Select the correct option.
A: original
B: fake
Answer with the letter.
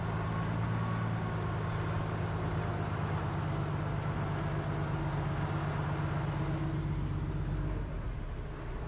A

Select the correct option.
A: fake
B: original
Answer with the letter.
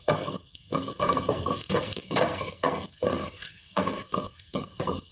A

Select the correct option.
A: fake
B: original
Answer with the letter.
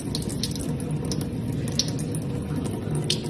B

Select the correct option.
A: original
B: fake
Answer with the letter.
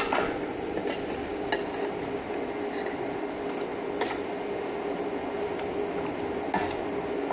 A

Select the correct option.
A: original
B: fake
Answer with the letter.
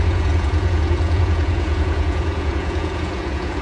B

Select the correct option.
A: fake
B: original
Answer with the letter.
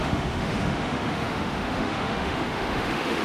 A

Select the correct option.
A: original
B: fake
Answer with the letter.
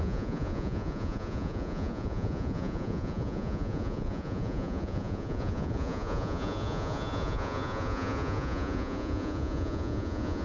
B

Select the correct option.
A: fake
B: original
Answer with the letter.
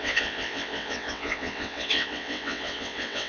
A